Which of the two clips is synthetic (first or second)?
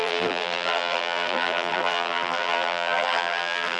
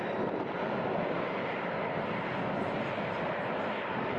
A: first